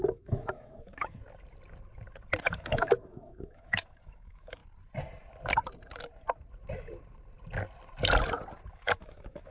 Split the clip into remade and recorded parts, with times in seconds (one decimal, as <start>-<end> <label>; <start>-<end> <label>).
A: 0.0-1.2 remade; 1.2-2.4 recorded; 2.4-4.6 remade; 4.6-8.7 recorded; 8.7-9.5 remade